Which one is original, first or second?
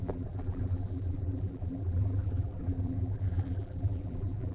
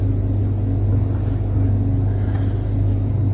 second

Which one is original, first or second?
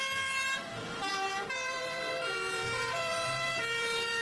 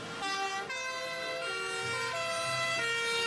second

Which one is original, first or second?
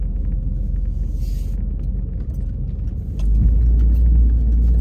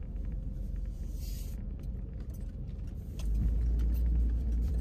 first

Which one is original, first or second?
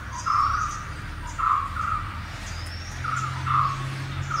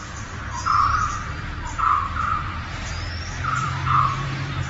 first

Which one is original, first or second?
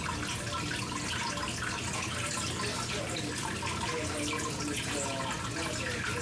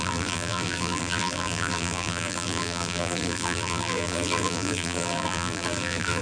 first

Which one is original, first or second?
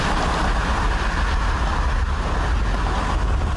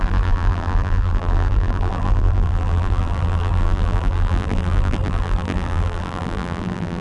first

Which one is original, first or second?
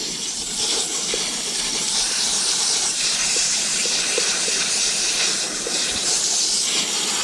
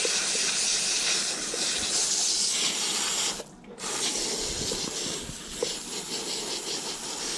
second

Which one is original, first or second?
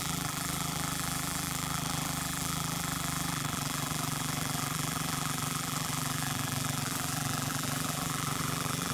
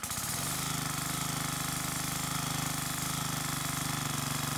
second